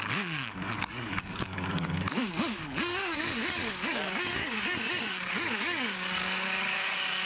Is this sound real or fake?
fake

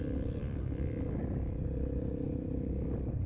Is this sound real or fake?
real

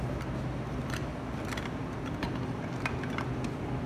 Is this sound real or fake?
real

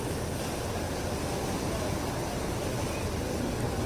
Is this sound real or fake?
real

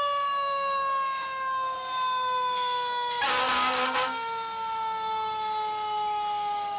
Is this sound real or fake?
fake